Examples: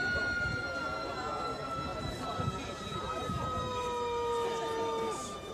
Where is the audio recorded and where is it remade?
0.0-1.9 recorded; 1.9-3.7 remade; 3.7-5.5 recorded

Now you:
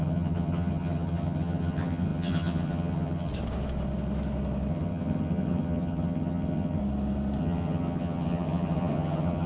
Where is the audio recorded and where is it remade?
0.0-3.3 remade; 3.3-4.7 recorded; 4.7-6.8 remade; 6.8-7.4 recorded; 7.4-9.5 remade